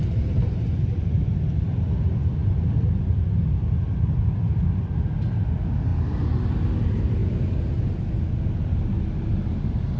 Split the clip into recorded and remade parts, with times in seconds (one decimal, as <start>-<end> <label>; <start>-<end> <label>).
0.0-10.0 recorded